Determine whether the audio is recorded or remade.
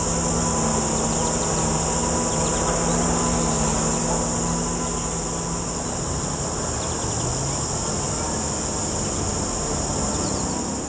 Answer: recorded